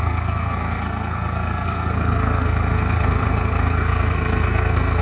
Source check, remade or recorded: remade